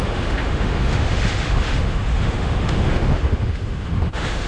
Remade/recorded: remade